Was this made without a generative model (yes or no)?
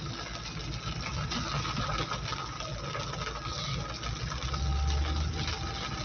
yes